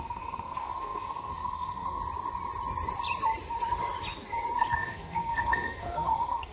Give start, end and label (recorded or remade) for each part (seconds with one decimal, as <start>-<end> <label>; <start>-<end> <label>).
0.0-2.0 remade; 2.0-4.6 recorded; 4.6-6.5 remade